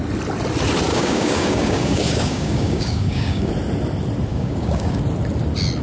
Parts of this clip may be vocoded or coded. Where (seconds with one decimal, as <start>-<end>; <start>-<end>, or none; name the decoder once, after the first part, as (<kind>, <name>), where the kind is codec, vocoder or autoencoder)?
0.9-3.5 (codec, DAC); 4.3-5.0